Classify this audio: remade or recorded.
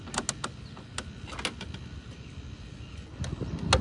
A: recorded